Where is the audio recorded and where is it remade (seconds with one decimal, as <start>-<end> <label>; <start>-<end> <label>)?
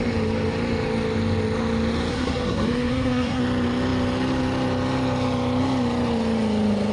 0.0-2.1 recorded; 2.1-3.4 remade; 3.4-6.9 recorded